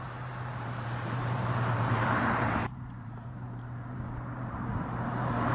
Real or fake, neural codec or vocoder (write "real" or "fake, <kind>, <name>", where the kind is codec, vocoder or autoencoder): fake, vocoder, BigVGAN v2